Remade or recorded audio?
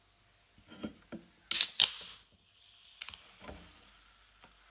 recorded